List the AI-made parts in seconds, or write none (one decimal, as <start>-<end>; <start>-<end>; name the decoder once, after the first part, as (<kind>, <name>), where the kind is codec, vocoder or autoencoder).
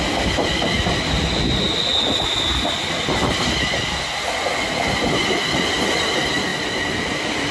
none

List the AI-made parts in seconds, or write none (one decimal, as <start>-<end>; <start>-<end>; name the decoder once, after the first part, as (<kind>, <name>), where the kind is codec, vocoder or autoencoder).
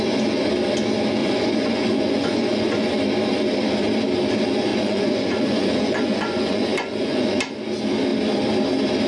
1.2-2.9 (vocoder, Vocos); 4.7-7.4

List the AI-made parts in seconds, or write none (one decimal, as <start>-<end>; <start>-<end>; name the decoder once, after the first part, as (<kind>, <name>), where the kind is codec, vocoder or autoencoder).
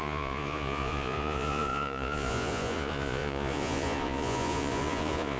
0.0-5.4 (vocoder, Vocos)